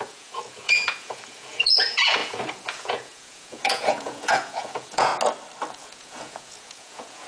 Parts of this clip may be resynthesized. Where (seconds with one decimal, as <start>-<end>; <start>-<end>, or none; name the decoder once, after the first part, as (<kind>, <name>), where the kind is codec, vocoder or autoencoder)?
0.0-5.1 (vocoder, Vocos); 5.7-7.3